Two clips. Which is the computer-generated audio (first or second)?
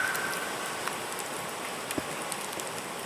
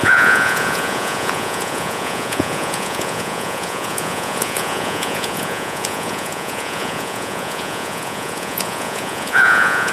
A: second